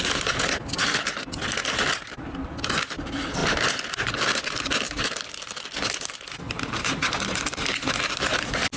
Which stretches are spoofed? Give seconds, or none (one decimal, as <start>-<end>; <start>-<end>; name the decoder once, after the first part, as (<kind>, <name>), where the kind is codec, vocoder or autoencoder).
none